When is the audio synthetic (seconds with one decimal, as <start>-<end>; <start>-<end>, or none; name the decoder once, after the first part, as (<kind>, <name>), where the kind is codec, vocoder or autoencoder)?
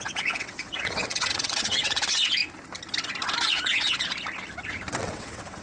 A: 0.0-2.4 (vocoder, WaveNeXt); 3.5-4.1; 4.9-5.6